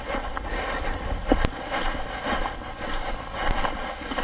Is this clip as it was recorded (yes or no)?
yes